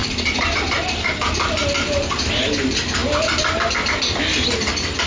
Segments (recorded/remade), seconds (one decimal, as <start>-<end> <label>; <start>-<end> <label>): 0.0-5.1 recorded